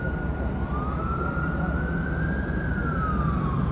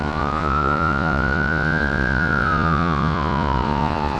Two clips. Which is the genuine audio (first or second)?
first